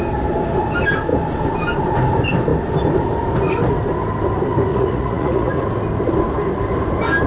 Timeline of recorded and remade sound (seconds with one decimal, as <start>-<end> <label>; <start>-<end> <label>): 0.0-4.7 recorded; 4.7-5.6 remade; 5.6-7.3 recorded